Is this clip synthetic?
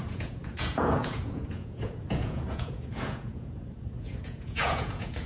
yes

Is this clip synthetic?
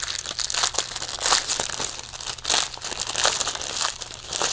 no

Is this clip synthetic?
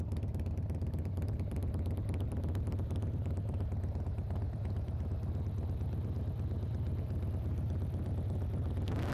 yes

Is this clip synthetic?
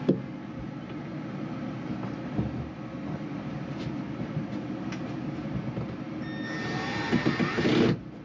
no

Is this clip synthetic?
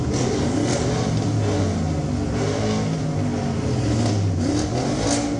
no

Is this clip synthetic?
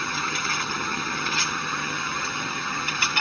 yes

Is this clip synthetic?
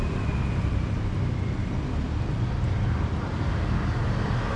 no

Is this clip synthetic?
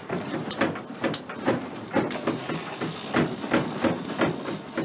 no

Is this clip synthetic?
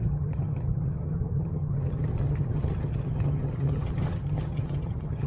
yes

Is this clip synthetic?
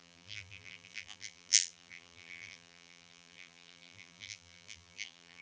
yes